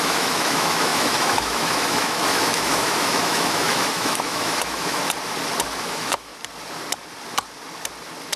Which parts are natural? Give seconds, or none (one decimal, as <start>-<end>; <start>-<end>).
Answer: 5.0-5.8; 6.3-8.4